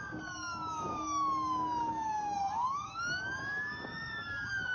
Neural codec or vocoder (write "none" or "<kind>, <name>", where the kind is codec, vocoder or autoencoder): codec, DAC